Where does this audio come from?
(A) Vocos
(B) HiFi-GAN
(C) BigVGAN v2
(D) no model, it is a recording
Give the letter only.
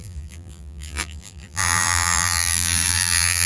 C